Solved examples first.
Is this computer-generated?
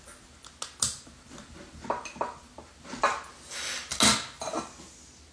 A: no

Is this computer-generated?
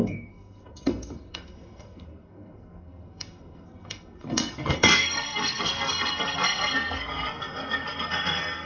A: yes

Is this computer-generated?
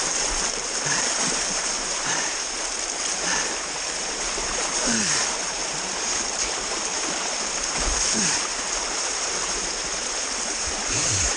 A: yes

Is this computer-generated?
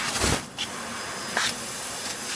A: no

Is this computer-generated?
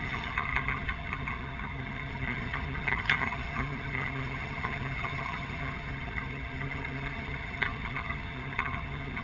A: yes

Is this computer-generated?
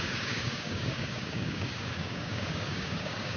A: yes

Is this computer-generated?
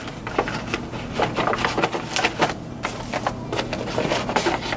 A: no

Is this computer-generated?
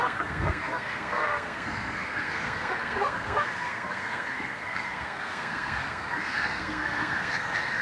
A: yes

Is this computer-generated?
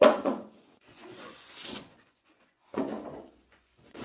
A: yes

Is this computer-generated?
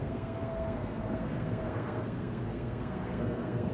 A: yes